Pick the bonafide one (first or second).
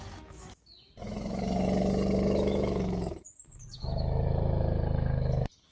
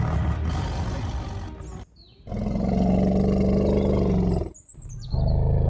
second